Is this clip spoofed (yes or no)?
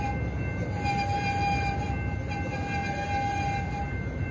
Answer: no